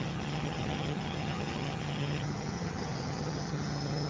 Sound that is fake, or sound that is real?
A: fake